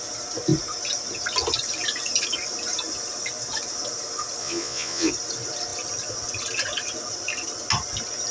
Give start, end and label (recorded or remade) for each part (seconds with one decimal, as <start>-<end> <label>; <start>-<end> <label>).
0.0-4.4 recorded; 4.4-5.1 remade; 5.1-8.3 recorded

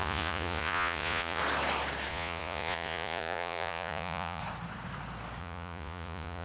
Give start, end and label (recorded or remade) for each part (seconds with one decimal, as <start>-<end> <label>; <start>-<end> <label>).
0.0-1.4 remade; 1.4-2.1 recorded; 2.1-4.4 remade; 4.4-5.4 recorded; 5.4-6.4 remade

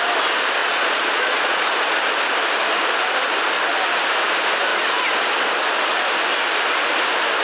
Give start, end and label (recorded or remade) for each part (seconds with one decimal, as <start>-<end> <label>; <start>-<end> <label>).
0.0-0.6 recorded; 0.6-1.6 remade; 1.6-7.4 recorded

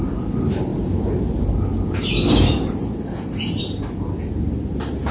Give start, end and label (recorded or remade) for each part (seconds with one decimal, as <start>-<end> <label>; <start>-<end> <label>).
0.0-5.1 recorded